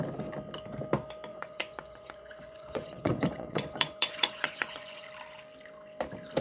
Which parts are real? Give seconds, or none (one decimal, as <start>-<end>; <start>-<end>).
0.0-1.3; 5.1-6.4